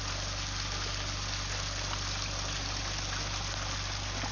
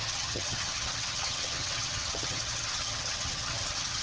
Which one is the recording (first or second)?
first